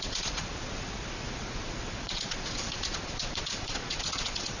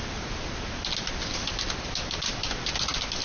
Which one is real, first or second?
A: second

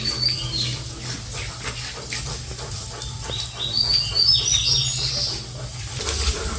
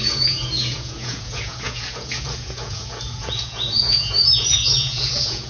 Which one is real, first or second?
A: first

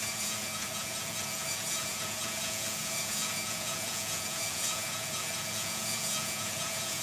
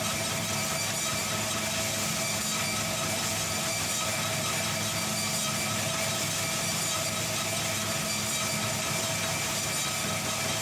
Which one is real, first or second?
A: second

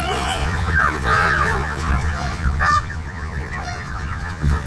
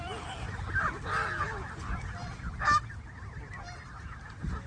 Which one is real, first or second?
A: second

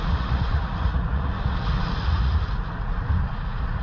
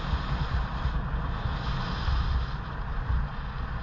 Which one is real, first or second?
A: second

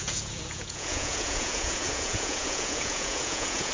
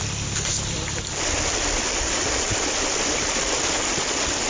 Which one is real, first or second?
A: second